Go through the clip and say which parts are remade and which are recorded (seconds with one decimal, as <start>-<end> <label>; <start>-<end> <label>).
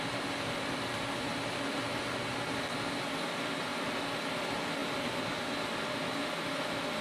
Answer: 0.0-7.0 recorded